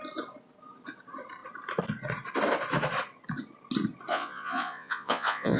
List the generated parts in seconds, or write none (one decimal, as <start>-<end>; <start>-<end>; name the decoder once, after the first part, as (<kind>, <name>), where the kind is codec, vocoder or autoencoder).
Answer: 4.1-5.6 (vocoder, Vocos)